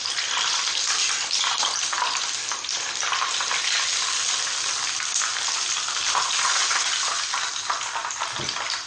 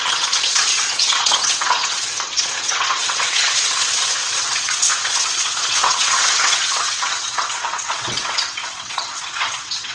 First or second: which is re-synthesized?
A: second